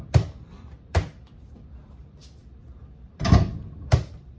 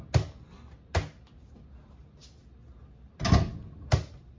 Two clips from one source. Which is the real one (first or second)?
second